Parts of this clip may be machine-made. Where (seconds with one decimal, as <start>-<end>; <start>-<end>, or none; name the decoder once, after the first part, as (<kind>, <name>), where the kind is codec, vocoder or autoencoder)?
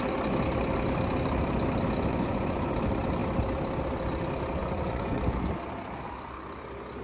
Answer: 2.1-2.7 (vocoder, Vocos); 4.6-5.5